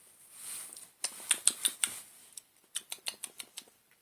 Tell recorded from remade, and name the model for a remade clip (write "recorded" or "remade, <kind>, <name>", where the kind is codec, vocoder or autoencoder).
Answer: remade, vocoder, BigVGAN v2